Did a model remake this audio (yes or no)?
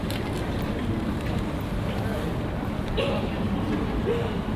no